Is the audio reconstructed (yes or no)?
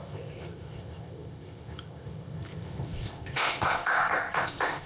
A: yes